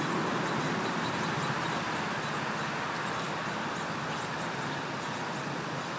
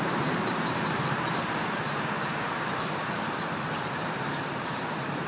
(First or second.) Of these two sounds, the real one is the first